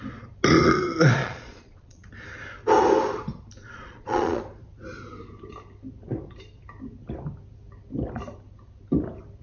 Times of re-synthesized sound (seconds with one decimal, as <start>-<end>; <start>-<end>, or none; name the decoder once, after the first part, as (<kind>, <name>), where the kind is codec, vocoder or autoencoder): 1.2-2.1 (vocoder, Vocos); 3.6-4.4